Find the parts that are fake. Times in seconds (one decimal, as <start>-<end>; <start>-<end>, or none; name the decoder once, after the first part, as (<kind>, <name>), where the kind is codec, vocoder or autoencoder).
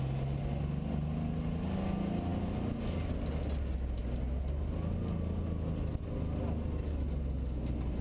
none